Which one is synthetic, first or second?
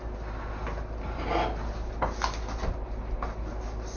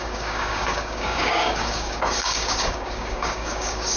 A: second